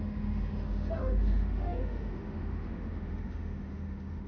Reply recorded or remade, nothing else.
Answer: remade